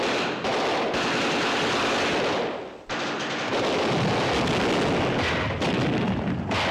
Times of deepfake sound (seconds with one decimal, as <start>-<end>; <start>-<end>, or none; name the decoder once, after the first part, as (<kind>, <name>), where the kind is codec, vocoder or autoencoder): none